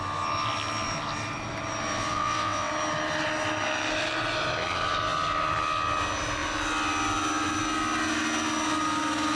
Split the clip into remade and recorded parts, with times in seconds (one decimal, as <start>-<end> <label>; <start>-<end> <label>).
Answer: 0.0-2.1 recorded; 2.1-2.7 remade; 2.7-9.4 recorded